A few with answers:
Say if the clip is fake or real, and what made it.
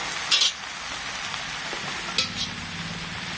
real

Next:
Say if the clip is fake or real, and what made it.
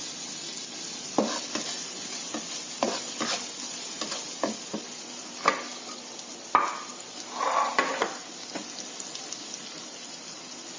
real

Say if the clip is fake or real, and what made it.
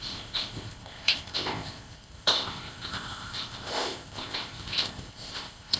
fake, codec, ZipCodec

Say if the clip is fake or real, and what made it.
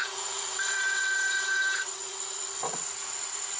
fake, vocoder, WaveNeXt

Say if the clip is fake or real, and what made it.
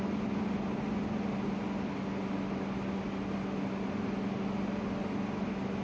real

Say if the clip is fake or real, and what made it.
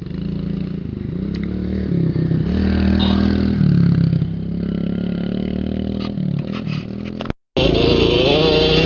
real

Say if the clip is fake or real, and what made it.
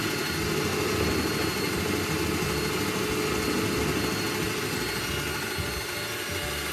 real